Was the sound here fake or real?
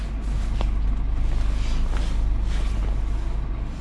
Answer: real